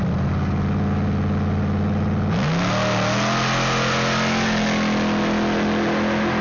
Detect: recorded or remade recorded